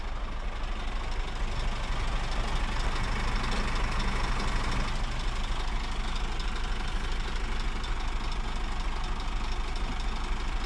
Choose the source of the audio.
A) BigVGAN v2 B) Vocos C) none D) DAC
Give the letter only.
C